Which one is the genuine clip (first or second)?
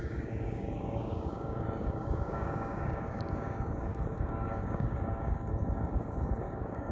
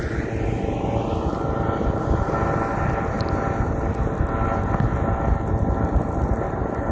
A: second